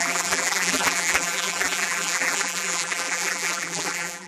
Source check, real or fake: fake